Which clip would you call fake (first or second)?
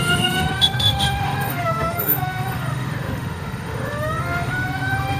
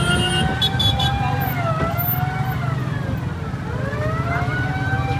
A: first